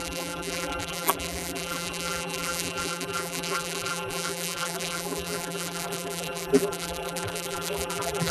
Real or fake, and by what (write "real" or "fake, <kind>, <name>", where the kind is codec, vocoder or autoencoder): fake, vocoder, BigVGAN v2